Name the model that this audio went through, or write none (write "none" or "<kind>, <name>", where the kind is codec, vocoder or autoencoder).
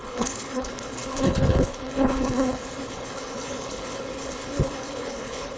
codec, HILCodec